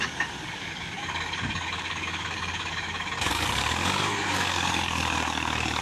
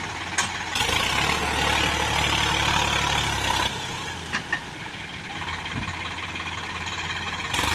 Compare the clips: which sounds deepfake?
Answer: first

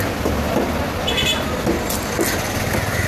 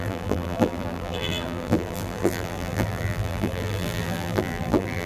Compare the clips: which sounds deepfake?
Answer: second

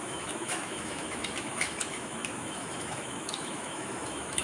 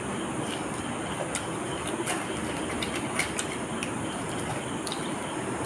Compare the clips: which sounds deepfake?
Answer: first